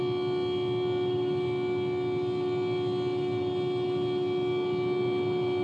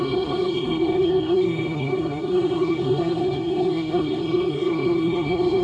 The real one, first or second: first